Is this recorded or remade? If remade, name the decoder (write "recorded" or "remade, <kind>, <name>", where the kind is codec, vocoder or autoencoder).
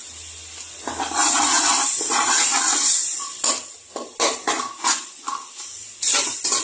recorded